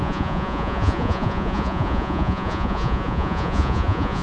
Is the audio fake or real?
fake